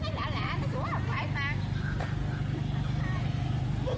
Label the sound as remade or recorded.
recorded